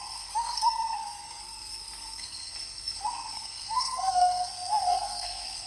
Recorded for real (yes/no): no